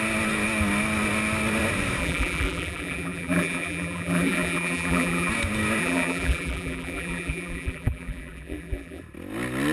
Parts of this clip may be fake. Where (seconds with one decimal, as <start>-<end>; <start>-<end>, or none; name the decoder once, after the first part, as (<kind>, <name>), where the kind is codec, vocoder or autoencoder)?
2.0-5.3 (vocoder, BigVGAN v2); 5.8-9.0